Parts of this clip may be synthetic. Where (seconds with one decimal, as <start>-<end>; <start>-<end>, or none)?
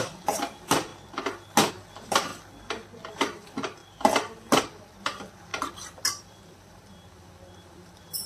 0.0-0.9; 1.7-2.3; 3.1-3.8; 4.6-5.5; 6.2-8.3